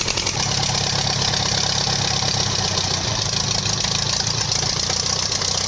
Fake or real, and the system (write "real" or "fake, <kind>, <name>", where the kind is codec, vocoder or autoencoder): real